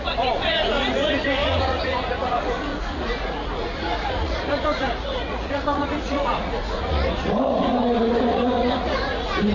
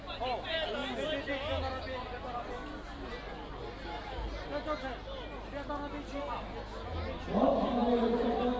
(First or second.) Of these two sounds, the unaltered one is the second